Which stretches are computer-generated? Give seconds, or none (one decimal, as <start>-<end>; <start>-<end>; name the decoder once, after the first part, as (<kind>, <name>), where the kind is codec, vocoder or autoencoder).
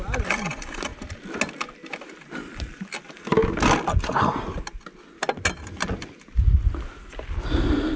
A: none